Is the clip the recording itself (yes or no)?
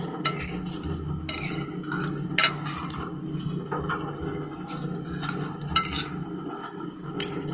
yes